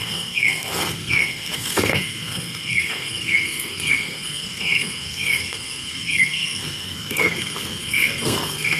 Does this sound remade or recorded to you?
remade